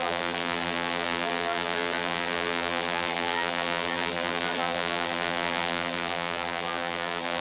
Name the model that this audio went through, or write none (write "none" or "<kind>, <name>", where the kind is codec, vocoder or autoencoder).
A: vocoder, BigVGAN v2